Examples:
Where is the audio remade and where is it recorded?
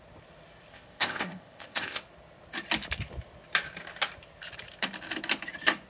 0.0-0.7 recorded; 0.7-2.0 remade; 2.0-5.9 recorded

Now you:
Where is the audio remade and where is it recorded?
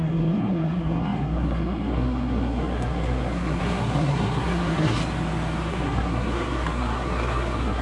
0.0-5.0 remade; 5.0-5.7 recorded; 5.7-7.8 remade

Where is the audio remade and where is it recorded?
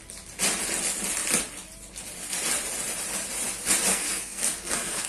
0.0-3.9 recorded; 3.9-5.1 remade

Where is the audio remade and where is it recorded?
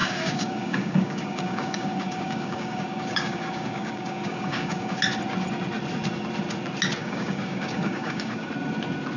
0.0-5.0 remade; 5.0-7.0 recorded; 7.0-8.5 remade; 8.5-9.2 recorded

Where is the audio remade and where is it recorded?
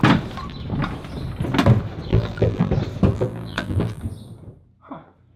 0.0-2.1 recorded; 2.1-2.7 remade; 2.7-3.1 recorded; 3.1-4.0 remade; 4.0-5.4 recorded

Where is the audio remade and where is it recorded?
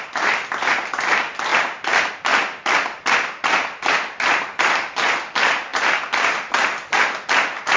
0.0-7.8 recorded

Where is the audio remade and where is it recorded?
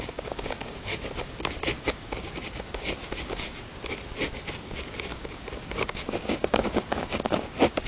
0.0-0.9 remade; 0.9-1.8 recorded; 1.8-3.7 remade; 3.7-4.5 recorded; 4.5-7.9 remade